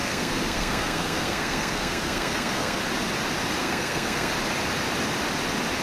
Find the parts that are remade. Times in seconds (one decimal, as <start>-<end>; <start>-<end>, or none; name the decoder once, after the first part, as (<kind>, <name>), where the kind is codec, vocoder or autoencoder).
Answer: 0.0-2.8 (codec, SNAC); 3.6-4.3